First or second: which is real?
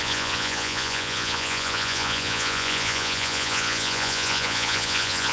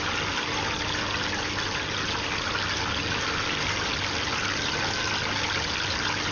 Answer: second